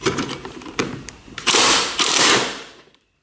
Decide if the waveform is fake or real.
fake